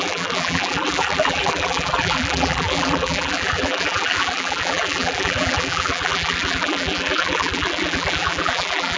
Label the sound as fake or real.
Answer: fake